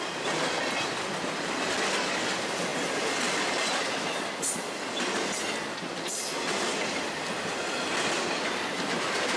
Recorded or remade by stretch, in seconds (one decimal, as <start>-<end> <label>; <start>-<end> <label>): 0.0-2.7 remade; 2.7-6.1 recorded; 6.1-9.4 remade